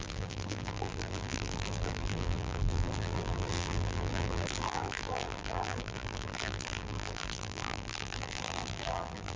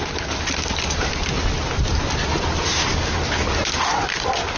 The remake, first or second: first